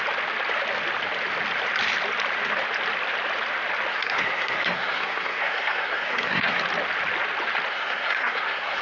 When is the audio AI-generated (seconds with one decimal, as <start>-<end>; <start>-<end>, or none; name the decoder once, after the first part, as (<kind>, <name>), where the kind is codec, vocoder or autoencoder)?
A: 3.9-6.6 (codec, SNAC); 7.7-8.8